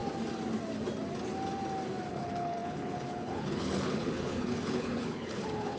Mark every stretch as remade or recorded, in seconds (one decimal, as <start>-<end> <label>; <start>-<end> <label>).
0.0-2.1 recorded; 2.1-5.8 remade